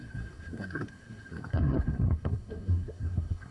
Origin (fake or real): fake